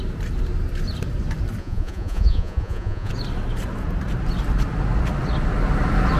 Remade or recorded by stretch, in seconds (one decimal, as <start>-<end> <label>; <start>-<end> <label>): 0.0-1.6 recorded; 1.6-3.1 remade; 3.1-6.2 recorded